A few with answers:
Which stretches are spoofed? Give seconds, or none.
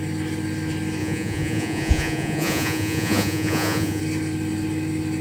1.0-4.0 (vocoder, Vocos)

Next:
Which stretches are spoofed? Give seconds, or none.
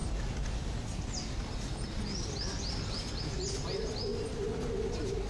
none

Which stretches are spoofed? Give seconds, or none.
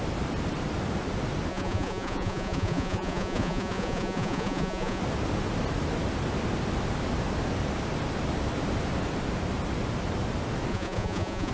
1.5-5.0 (vocoder, Vocos); 10.7-11.5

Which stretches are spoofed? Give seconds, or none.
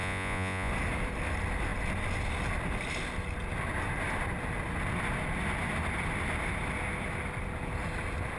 0.0-0.7 (vocoder, Vocos)